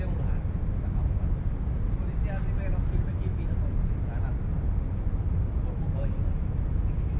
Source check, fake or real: real